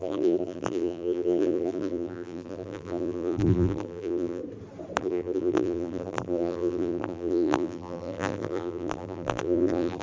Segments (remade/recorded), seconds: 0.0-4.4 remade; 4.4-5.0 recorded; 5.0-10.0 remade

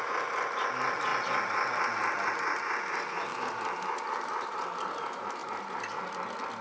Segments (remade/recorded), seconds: 0.0-3.3 recorded; 3.3-5.0 remade; 5.0-5.4 recorded; 5.4-6.0 remade; 6.0-6.6 recorded

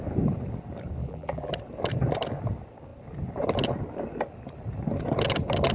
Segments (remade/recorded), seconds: 0.0-1.0 recorded; 1.0-1.5 remade; 1.5-5.7 recorded

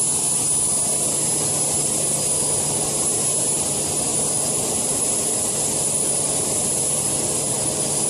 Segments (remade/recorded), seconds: 0.0-4.1 recorded; 4.1-8.1 remade

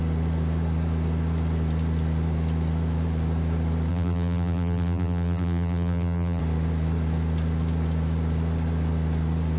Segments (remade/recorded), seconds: 0.0-3.9 recorded; 3.9-6.4 remade; 6.4-9.6 recorded

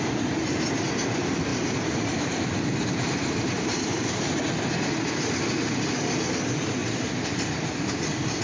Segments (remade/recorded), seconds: 0.0-1.5 recorded; 1.5-4.3 remade; 4.3-6.8 recorded; 6.8-7.7 remade; 7.7-8.4 recorded

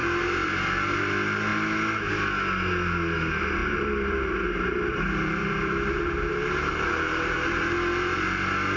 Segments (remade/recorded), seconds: 0.0-1.0 remade; 1.0-3.6 recorded; 3.6-7.6 remade; 7.6-8.8 recorded

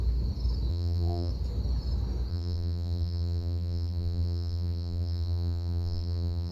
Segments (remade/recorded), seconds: 0.0-0.7 recorded; 0.7-1.3 remade; 1.3-2.3 recorded; 2.3-6.5 remade